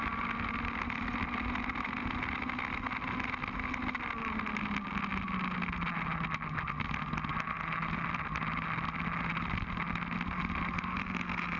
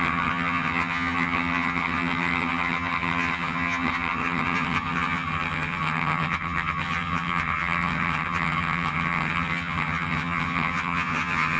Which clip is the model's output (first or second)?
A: second